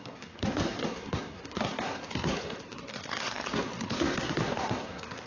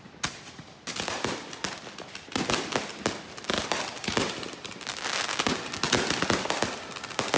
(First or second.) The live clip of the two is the second